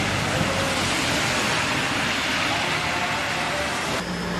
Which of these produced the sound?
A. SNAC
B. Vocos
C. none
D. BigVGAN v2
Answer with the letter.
C